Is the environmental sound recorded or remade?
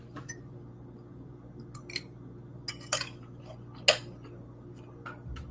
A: recorded